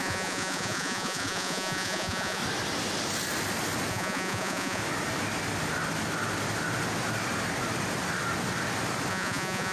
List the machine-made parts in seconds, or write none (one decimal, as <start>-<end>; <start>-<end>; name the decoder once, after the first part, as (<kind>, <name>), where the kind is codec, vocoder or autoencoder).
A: 0.0-2.4 (vocoder, Vocos); 3.9-4.8; 9.1-9.7